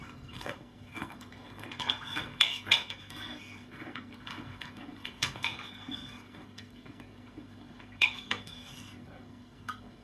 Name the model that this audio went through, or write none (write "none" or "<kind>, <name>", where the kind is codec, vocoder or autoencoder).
codec, SNAC